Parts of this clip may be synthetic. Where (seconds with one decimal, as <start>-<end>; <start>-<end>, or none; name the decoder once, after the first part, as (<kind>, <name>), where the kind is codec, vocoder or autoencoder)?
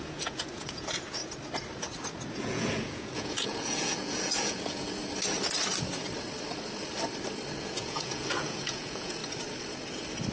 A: 0.0-1.2 (vocoder, Vocos); 2.3-5.0; 7.6-9.2